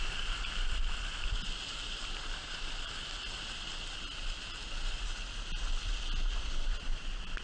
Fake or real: fake